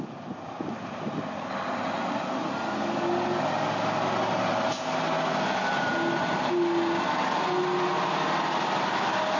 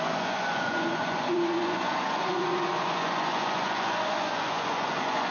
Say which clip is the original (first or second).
first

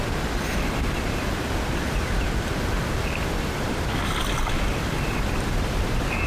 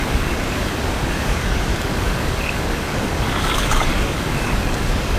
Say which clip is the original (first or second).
first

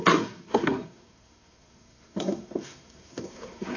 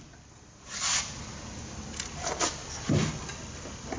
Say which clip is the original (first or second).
second